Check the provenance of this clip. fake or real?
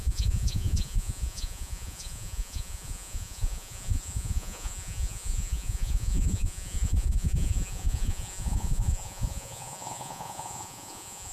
fake